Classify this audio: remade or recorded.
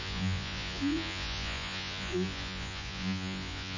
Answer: remade